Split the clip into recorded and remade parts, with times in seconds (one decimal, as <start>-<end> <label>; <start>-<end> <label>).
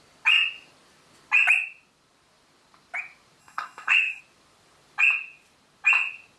0.0-3.4 recorded; 3.4-4.2 remade; 4.2-6.4 recorded